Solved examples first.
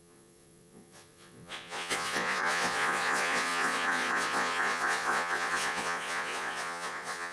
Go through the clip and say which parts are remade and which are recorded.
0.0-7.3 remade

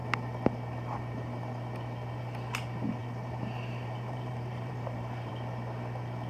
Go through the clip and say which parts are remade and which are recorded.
0.0-3.0 recorded; 3.0-5.3 remade; 5.3-6.3 recorded

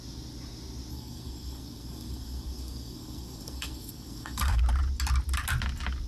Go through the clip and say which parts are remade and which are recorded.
0.0-0.9 recorded; 0.9-4.6 remade; 4.6-6.1 recorded

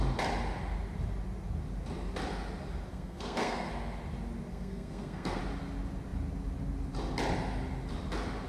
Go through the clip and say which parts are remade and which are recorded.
0.0-2.9 recorded; 2.9-3.7 remade; 3.7-4.5 recorded; 4.5-5.4 remade; 5.4-8.5 recorded

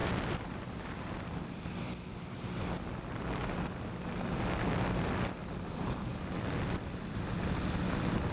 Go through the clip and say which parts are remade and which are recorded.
0.0-2.6 remade; 2.6-8.3 recorded

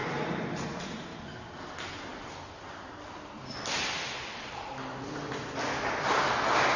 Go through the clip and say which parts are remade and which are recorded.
0.0-6.8 recorded

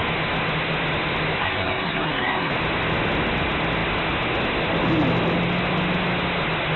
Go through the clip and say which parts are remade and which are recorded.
0.0-1.4 recorded; 1.4-2.5 remade; 2.5-6.8 recorded